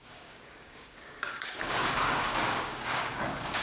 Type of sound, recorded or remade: remade